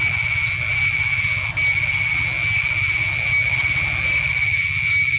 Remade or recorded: recorded